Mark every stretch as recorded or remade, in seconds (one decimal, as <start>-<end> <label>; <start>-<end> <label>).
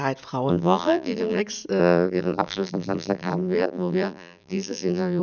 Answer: 0.0-0.5 recorded; 0.5-1.4 remade; 1.4-1.8 recorded; 1.8-5.2 remade